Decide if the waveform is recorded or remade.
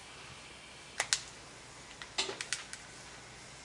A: recorded